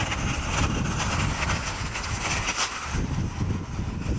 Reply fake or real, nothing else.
real